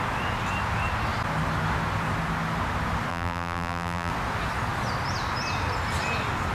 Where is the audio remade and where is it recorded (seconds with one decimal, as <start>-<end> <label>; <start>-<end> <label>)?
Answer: 0.0-3.1 recorded; 3.1-4.1 remade; 4.1-6.5 recorded